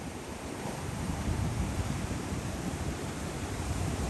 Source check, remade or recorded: remade